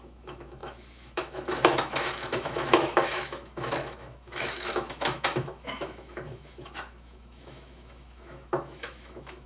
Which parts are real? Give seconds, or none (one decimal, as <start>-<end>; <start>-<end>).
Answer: none